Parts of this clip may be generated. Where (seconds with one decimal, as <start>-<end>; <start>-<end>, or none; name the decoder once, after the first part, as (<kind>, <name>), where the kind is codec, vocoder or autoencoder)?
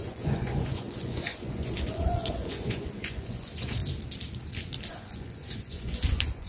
0.0-3.8 (vocoder, Vocos); 4.9-6.5